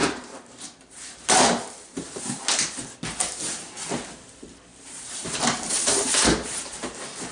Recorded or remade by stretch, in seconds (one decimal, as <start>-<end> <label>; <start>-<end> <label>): 0.0-2.2 remade; 2.2-4.7 recorded; 4.7-6.6 remade; 6.6-7.3 recorded